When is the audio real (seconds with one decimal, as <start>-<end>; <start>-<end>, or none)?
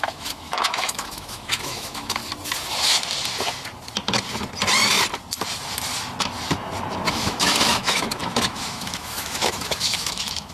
2.2-7.1